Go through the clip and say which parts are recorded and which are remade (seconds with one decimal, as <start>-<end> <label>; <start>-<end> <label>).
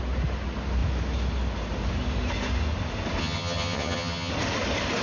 0.0-3.2 recorded; 3.2-4.3 remade; 4.3-5.0 recorded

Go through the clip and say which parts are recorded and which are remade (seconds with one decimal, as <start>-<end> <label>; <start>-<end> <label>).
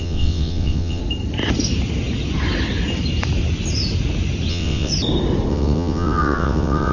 0.0-1.0 remade; 1.0-4.5 recorded; 4.5-4.9 remade; 4.9-5.5 recorded; 5.5-6.9 remade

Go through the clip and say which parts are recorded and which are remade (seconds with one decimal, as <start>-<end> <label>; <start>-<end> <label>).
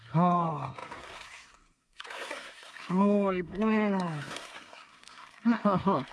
0.0-6.1 remade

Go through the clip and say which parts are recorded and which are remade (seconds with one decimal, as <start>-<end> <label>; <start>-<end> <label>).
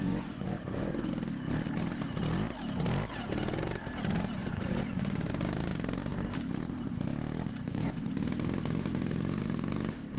0.0-1.1 remade; 1.1-4.4 recorded; 4.4-5.3 remade; 5.3-7.5 recorded; 7.5-8.1 remade; 8.1-10.2 recorded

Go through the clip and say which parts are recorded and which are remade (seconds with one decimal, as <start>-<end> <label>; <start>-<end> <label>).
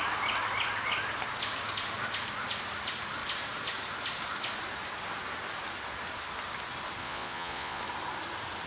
0.0-7.0 recorded; 7.0-7.8 remade; 7.8-8.7 recorded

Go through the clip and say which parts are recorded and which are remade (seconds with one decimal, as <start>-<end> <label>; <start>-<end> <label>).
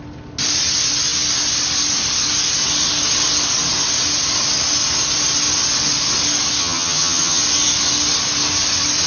0.0-6.6 recorded; 6.6-7.4 remade; 7.4-9.1 recorded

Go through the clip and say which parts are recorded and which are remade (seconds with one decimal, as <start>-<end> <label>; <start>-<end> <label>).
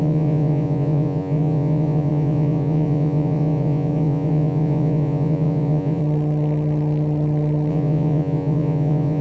0.0-6.0 remade; 6.0-7.7 recorded; 7.7-9.2 remade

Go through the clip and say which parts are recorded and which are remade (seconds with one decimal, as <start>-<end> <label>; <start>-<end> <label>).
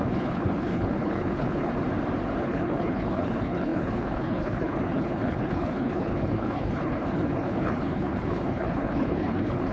0.0-1.7 remade; 1.7-2.4 recorded; 2.4-9.7 remade